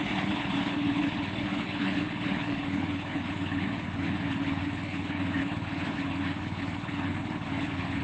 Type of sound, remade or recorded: remade